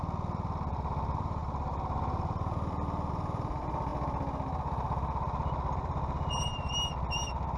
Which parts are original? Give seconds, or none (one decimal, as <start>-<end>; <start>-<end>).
0.0-7.6